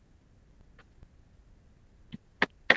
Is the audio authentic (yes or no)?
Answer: yes